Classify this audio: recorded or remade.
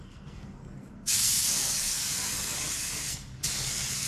remade